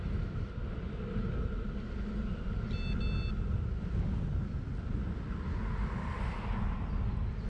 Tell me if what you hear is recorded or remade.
recorded